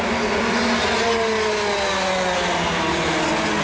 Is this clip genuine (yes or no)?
yes